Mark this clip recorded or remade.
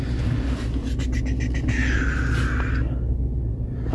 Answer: recorded